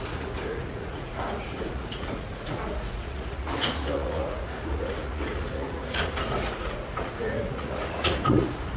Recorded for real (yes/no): no